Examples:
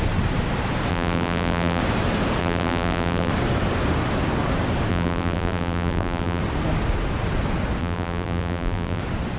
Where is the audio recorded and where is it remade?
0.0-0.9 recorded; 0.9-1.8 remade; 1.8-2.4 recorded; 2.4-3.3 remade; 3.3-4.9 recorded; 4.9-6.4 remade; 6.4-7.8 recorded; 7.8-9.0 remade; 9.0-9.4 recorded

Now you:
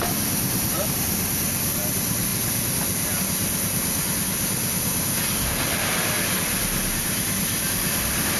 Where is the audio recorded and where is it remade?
0.0-2.3 recorded; 2.3-3.2 remade; 3.2-8.4 recorded

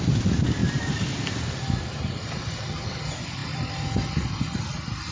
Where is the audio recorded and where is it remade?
0.0-0.6 recorded; 0.6-3.0 remade; 3.0-5.1 recorded

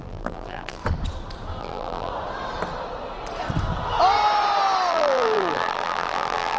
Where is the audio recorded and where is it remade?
0.0-0.8 remade; 0.8-1.6 recorded; 1.6-2.1 remade; 2.1-4.9 recorded; 4.9-6.6 remade

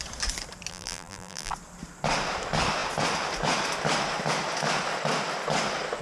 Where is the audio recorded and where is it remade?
0.0-0.7 recorded; 0.7-1.5 remade; 1.5-6.0 recorded

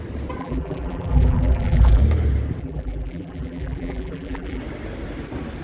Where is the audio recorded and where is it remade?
0.0-0.4 recorded; 0.4-2.0 remade; 2.0-2.6 recorded; 2.6-4.6 remade; 4.6-5.6 recorded